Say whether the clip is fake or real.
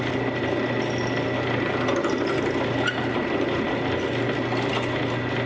real